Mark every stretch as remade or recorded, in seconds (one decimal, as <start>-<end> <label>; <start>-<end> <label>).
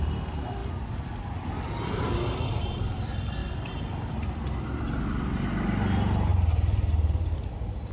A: 0.0-0.6 recorded; 0.6-2.9 remade; 2.9-3.4 recorded; 3.4-5.0 remade; 5.0-7.9 recorded